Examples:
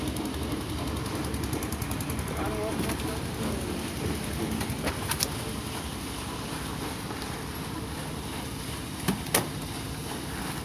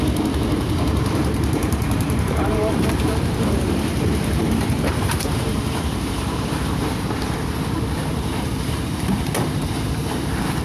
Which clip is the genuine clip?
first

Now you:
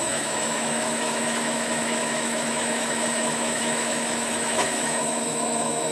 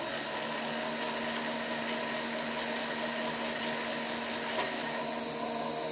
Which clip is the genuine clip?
second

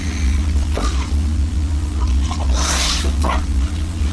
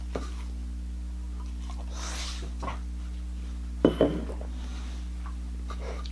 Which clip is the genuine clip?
second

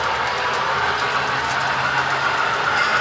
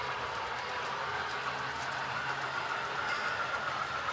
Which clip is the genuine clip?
first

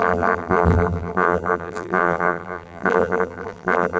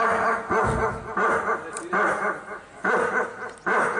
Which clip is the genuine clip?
second